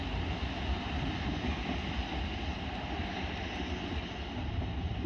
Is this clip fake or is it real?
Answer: real